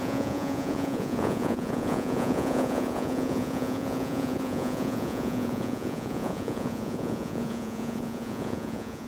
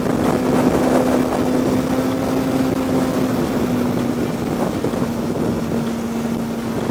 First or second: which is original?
second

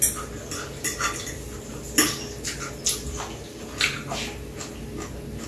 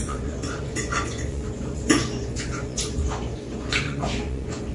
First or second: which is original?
first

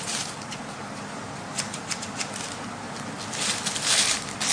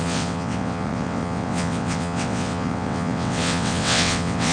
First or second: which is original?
first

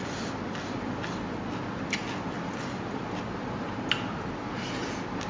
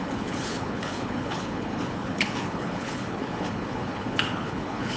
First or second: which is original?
first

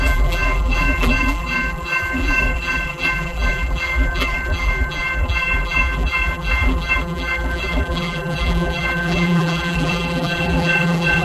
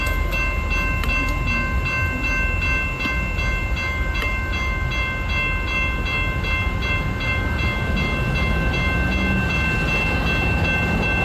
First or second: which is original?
second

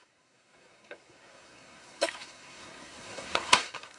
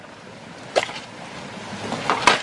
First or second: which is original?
second